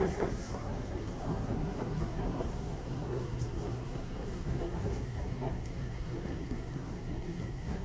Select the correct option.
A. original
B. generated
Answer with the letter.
B